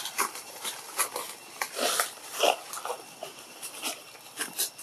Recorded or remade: recorded